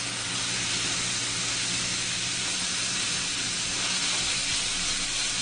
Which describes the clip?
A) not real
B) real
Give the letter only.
B